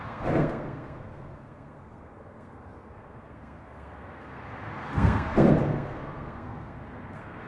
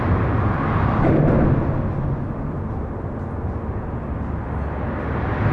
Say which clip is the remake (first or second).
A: first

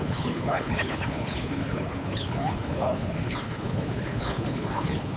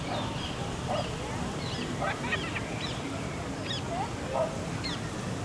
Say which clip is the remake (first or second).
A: first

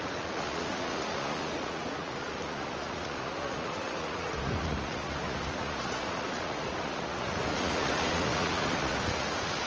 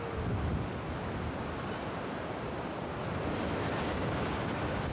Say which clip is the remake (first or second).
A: first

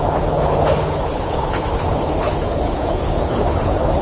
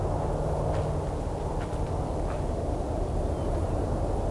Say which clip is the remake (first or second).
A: first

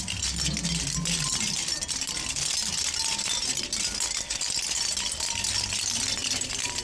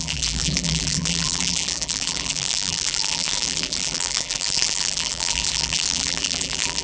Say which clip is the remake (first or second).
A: second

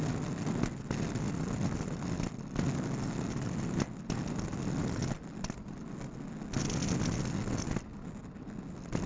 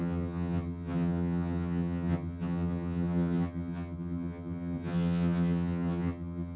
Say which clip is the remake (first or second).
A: second